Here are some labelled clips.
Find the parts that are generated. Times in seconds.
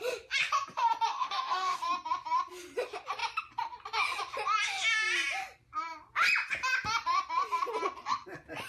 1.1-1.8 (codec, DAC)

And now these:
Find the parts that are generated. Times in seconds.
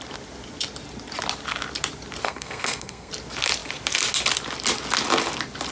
2.2-3.1 (codec, SNAC)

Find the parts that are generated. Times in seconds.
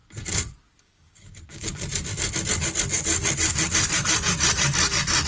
0.8-1.7 (codec, DAC)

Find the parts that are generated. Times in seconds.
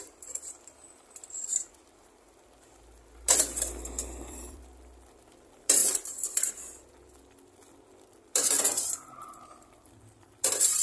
0.0-5.8 (vocoder, BigVGAN v2); 6.5-10.8